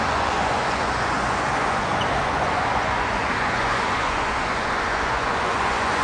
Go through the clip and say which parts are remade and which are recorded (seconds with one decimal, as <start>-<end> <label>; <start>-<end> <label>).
0.0-6.0 remade